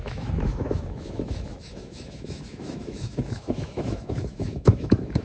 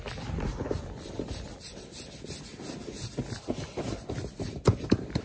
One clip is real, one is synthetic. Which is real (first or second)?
second